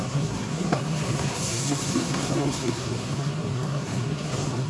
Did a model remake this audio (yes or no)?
yes